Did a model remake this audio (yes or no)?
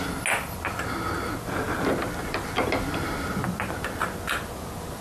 no